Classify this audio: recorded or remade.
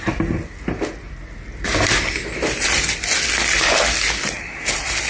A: recorded